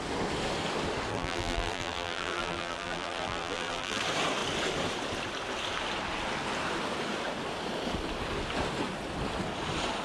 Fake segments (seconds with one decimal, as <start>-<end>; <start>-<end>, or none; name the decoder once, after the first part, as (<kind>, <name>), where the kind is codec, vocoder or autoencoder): 1.1-4.0 (vocoder, BigVGAN v2)